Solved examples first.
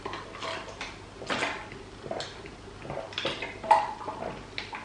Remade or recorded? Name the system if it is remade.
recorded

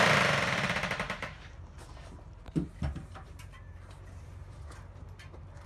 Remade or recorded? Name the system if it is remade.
remade, vocoder, BigVGAN v2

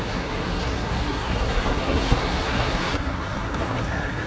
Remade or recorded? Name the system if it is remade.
remade, codec, SNAC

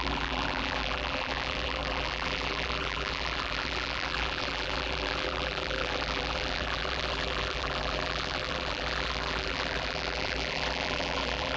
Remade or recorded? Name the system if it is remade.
remade, vocoder, BigVGAN v2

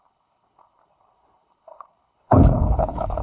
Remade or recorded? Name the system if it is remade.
remade, codec, HILCodec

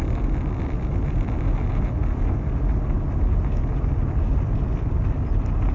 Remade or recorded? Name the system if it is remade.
recorded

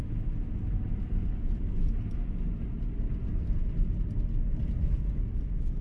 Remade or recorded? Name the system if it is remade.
recorded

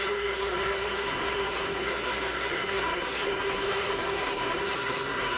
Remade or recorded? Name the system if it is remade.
remade, codec, SNAC